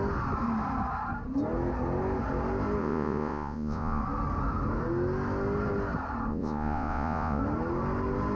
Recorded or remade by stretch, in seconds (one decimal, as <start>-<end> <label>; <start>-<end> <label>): 0.0-2.8 recorded; 2.8-4.0 remade; 4.0-6.3 recorded; 6.3-7.4 remade; 7.4-8.4 recorded